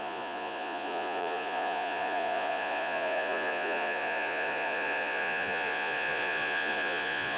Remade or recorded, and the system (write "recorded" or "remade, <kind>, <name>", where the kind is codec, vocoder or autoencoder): remade, vocoder, Vocos